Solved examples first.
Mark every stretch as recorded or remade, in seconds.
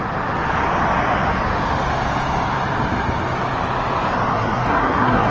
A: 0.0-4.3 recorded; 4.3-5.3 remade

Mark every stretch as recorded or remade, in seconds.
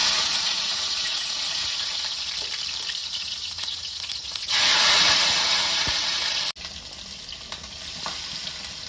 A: 0.0-2.0 remade; 2.0-3.0 recorded; 3.0-6.2 remade; 6.2-8.9 recorded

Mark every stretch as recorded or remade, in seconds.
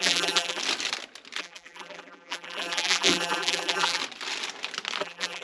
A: 0.0-0.6 remade; 0.6-1.4 recorded; 1.4-4.0 remade; 4.0-5.0 recorded; 5.0-5.4 remade